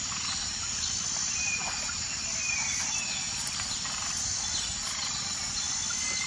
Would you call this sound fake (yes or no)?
no